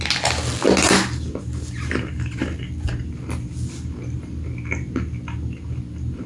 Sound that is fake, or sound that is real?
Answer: real